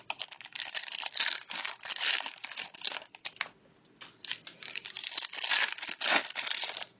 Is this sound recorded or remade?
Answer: recorded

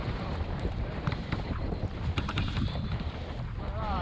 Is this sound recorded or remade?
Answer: remade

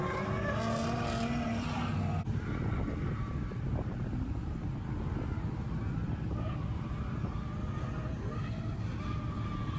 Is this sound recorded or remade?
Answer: recorded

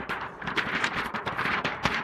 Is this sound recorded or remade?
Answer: remade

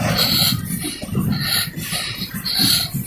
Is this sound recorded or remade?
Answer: remade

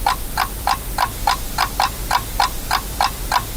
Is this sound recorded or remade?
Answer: recorded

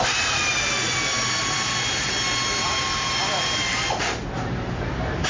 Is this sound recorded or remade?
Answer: recorded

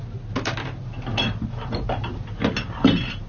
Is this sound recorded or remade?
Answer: recorded